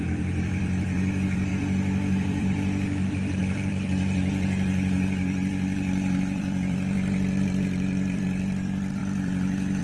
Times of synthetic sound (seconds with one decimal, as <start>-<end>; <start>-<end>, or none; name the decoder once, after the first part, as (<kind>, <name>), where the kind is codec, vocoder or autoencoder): 0.0-9.8 (vocoder, BigVGAN v2)